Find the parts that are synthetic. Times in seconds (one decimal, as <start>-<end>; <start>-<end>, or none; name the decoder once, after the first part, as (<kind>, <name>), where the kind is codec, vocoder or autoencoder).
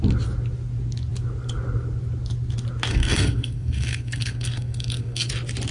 2.9-5.3 (codec, SNAC)